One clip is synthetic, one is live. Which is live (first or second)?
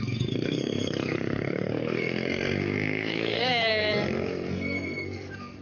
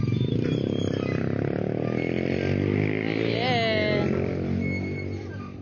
second